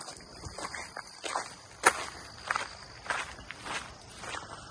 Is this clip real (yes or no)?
yes